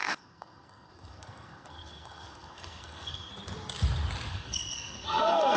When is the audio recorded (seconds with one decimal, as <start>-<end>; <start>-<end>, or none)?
3.3-4.3